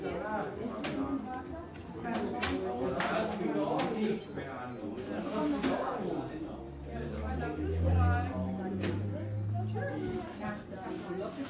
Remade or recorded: recorded